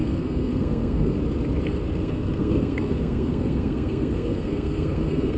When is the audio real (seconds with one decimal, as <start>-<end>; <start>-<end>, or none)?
1.2-2.0